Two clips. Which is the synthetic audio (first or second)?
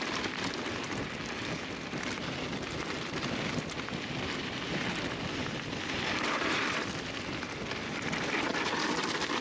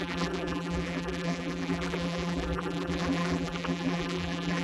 second